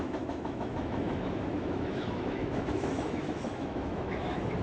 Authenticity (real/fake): fake